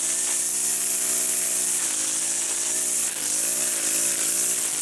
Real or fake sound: real